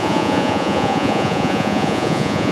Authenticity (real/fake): fake